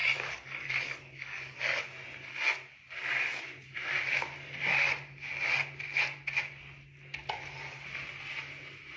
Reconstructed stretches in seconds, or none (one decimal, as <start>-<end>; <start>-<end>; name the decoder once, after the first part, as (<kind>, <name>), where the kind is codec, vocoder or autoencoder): 0.0-1.8 (codec, DAC)